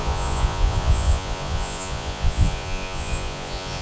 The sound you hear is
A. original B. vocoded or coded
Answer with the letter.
B